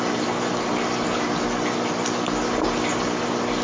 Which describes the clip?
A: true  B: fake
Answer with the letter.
A